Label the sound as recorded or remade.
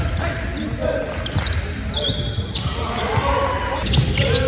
recorded